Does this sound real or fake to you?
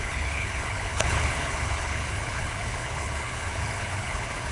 fake